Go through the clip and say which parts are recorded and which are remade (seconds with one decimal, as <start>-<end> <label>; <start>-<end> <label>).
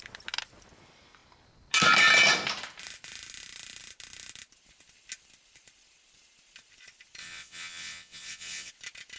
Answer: 0.0-7.2 recorded; 7.2-8.7 remade; 8.7-9.2 recorded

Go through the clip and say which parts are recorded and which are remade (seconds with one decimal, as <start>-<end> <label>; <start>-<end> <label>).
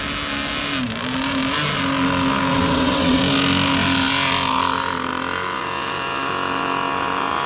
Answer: 0.0-2.5 recorded; 2.5-3.2 remade; 3.2-7.5 recorded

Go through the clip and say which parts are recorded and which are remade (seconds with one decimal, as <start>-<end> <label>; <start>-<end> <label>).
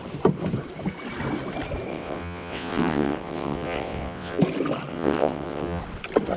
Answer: 0.0-1.9 recorded; 1.9-4.4 remade; 4.4-4.9 recorded; 4.9-5.8 remade; 5.8-6.4 recorded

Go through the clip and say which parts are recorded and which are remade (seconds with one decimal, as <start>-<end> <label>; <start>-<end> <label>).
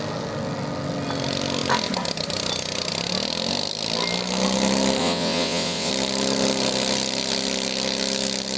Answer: 0.0-5.0 recorded; 5.0-5.9 remade; 5.9-8.6 recorded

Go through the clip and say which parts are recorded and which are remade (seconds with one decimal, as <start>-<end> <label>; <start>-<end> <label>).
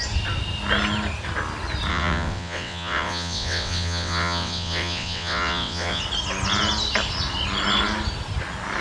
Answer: 0.0-1.9 recorded; 1.9-6.0 remade; 6.0-8.8 recorded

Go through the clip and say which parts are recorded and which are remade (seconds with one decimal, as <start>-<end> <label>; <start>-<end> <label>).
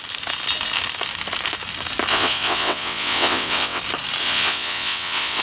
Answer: 0.0-2.1 recorded; 2.1-3.8 remade; 3.8-4.2 recorded; 4.2-5.4 remade